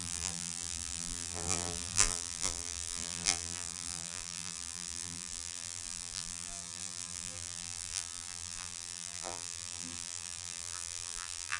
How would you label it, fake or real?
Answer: fake